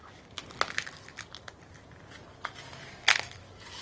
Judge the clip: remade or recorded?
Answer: recorded